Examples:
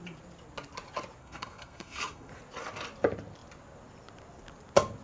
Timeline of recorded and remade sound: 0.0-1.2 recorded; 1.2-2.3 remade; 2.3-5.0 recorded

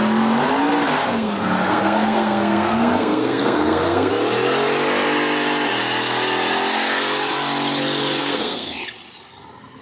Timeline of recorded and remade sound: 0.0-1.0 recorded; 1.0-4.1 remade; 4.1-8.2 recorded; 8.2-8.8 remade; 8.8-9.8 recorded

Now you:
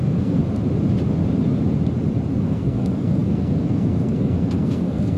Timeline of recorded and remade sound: 0.0-0.4 remade; 0.4-2.3 recorded; 2.3-5.2 remade

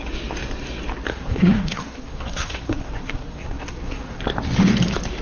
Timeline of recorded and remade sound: 0.0-1.1 recorded; 1.1-4.2 remade; 4.2-5.2 recorded

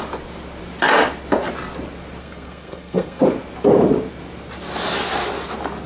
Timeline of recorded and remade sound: 0.0-2.2 recorded; 2.2-3.2 remade; 3.2-5.9 recorded